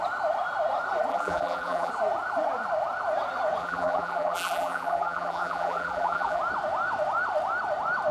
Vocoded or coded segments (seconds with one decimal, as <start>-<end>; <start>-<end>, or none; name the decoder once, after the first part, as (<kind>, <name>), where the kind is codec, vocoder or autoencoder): 1.1-1.9 (vocoder, BigVGAN v2); 3.6-6.4